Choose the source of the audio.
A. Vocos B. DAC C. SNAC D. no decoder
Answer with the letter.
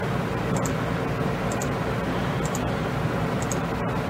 D